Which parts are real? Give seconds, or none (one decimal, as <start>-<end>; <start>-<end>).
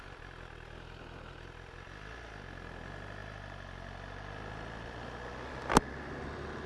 0.0-6.7